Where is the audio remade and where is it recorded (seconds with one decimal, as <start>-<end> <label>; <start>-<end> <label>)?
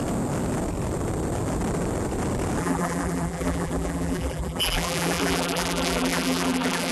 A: 0.0-2.6 recorded; 2.6-6.9 remade